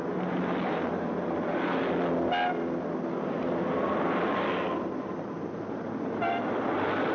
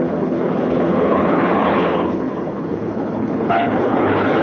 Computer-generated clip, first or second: second